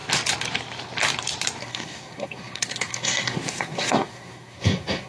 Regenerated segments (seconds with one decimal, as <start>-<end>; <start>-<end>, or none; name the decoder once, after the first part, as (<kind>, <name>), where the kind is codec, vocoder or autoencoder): 1.6-5.1 (codec, SNAC)